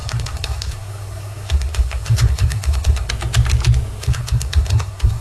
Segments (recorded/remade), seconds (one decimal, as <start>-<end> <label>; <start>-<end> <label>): 0.0-3.1 remade; 3.1-4.0 recorded; 4.0-5.2 remade